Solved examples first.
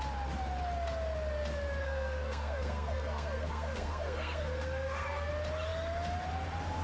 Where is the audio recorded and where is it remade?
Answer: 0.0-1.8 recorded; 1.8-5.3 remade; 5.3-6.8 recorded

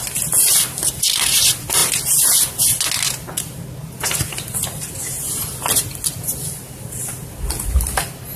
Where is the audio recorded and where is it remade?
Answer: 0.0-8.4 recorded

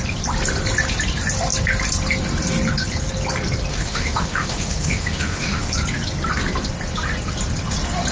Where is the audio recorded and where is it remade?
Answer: 0.0-3.7 recorded; 3.7-5.7 remade; 5.7-8.1 recorded